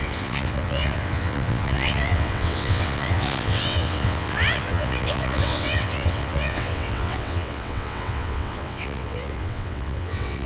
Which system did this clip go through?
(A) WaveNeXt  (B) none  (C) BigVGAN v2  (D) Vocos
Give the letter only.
A